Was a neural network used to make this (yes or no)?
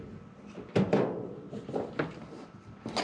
yes